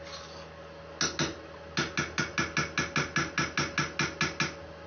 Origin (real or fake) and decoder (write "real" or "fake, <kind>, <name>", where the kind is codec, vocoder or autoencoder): real